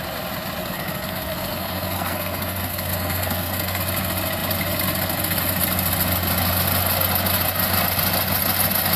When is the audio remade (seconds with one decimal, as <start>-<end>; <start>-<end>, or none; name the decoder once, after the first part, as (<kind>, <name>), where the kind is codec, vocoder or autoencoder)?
0.6-3.8 (codec, SNAC)